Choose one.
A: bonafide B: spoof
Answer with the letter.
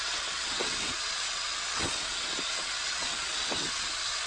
B